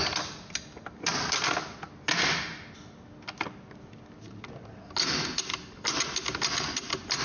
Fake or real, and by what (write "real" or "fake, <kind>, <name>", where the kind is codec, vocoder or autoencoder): real